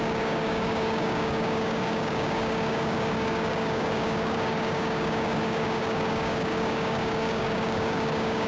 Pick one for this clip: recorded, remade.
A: remade